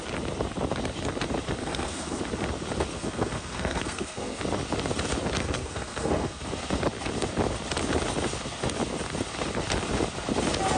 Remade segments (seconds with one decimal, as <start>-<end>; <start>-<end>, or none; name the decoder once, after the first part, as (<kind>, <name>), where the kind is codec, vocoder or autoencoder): 1.6-2.2 (codec, SNAC); 2.9-4.4; 5.4-6.4